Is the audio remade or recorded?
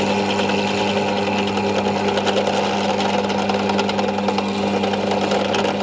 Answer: recorded